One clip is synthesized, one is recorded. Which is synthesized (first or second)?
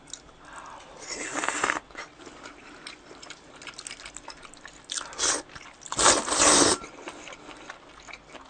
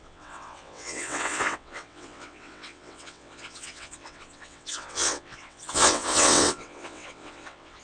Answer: second